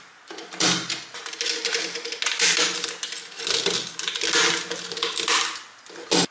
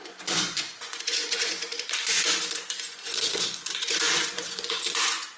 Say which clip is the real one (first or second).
first